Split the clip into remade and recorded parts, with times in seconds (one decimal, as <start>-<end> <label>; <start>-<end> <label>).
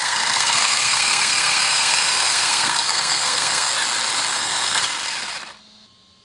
0.0-3.7 remade; 3.7-4.3 recorded; 4.3-4.8 remade; 4.8-6.2 recorded